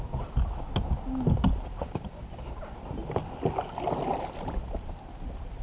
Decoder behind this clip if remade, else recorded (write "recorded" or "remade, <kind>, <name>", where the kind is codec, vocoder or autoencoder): recorded